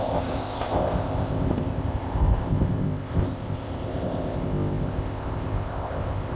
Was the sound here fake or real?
fake